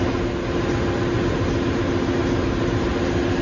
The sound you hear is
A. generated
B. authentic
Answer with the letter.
B